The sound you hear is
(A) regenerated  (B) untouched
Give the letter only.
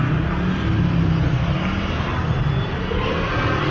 B